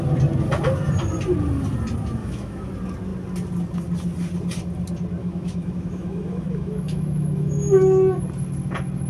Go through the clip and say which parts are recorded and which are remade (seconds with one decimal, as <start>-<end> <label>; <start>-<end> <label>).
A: 0.0-2.2 recorded; 2.2-2.7 remade; 2.7-5.2 recorded; 5.2-8.2 remade; 8.2-9.1 recorded